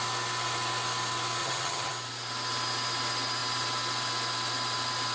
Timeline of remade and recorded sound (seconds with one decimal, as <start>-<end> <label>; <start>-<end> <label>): 0.0-1.4 recorded; 1.4-1.9 remade; 1.9-5.1 recorded